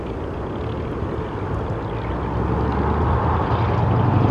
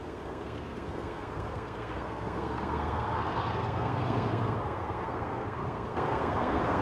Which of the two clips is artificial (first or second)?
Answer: second